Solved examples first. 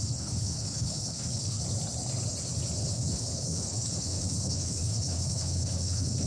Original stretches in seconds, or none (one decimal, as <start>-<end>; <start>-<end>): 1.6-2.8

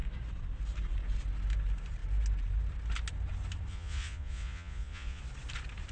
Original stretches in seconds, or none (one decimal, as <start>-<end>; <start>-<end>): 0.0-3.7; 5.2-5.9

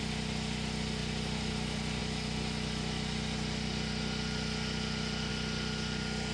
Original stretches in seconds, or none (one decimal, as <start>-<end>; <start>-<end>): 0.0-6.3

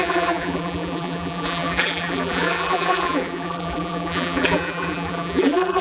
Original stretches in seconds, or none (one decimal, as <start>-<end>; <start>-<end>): none

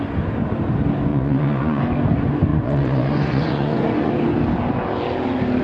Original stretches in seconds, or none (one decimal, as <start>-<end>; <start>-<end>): 0.0-1.1; 1.8-2.5; 4.1-5.6

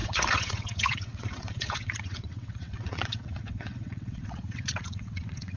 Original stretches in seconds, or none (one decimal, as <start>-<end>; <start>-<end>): none

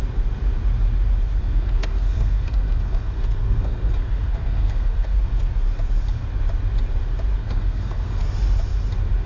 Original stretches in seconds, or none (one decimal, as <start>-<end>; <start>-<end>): 0.0-1.4; 5.5-7.4; 8.3-9.3